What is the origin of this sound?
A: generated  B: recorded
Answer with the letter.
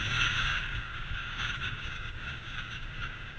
A